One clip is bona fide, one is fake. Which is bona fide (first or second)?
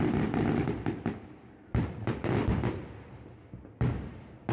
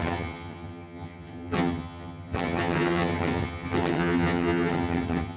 first